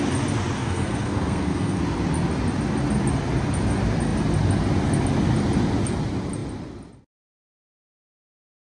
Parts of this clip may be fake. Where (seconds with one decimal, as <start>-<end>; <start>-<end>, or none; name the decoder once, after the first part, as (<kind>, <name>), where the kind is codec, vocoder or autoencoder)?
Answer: 0.6-1.8 (codec, SNAC)